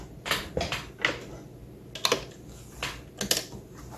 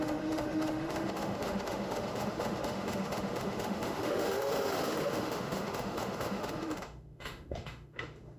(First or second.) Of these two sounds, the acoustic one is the first